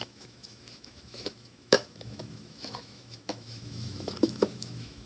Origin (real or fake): fake